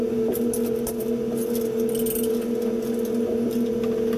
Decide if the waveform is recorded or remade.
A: recorded